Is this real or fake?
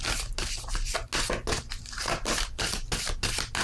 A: real